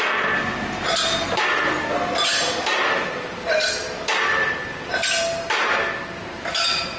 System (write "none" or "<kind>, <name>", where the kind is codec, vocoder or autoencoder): none